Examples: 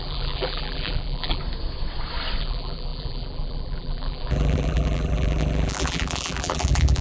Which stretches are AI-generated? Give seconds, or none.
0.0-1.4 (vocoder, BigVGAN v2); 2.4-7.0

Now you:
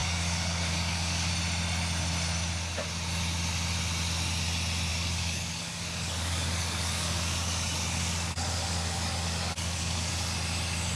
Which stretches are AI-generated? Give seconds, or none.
0.0-1.3 (codec, DAC); 4.9-10.1

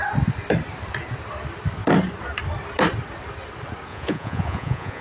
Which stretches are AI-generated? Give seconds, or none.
3.9-5.0 (vocoder, Vocos)

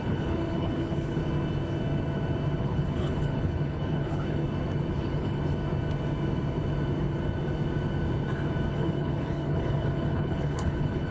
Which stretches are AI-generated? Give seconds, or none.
0.0-1.2 (codec, HILCodec); 2.6-4.4; 4.9-5.4; 8.7-11.1